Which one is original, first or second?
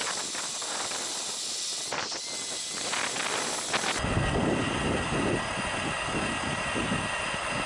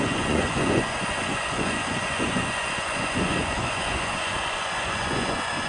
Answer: first